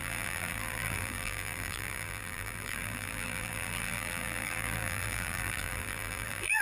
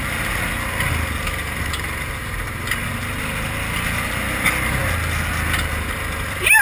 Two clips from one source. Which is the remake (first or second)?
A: first